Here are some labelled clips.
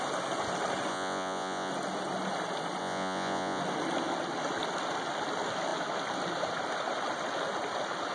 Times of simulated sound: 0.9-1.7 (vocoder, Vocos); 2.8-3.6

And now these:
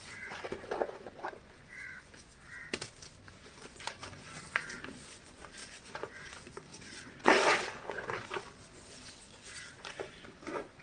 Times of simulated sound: 0.0-2.3 (vocoder, Vocos); 3.3-10.8

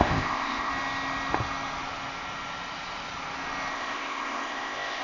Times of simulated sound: 0.0-0.7 (codec, ZipCodec); 3.7-5.0

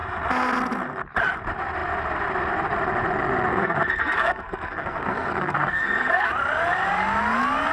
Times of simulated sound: 3.5-6.3 (codec, SNAC)

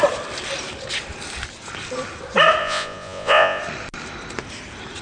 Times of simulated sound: 2.6-3.6 (vocoder, Vocos)

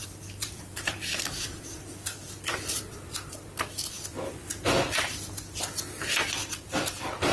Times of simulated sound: 0.0-3.5 (vocoder, BigVGAN v2); 6.2-7.3

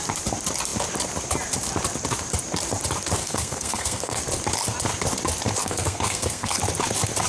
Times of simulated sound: 3.2-4.2 (codec, SNAC); 5.6-6.6

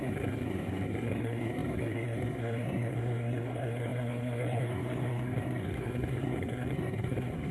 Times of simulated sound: 0.0-7.5 (codec, SNAC)